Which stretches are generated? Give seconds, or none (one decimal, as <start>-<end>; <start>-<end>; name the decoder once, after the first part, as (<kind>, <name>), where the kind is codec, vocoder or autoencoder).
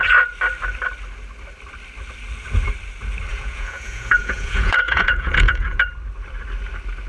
3.3-5.8 (vocoder, Vocos)